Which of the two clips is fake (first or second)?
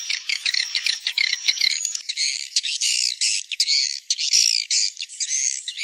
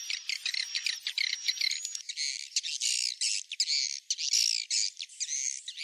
first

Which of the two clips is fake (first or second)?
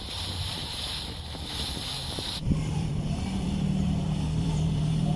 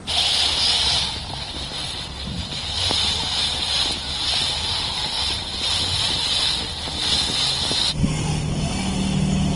first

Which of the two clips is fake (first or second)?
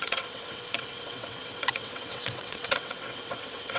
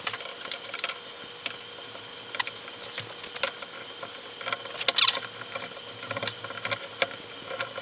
first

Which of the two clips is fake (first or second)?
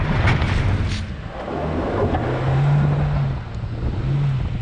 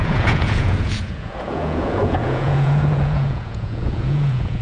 second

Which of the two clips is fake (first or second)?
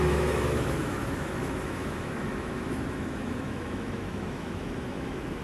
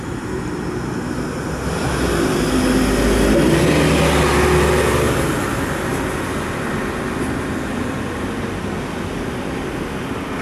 first